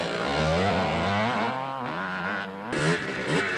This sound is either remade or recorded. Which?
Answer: recorded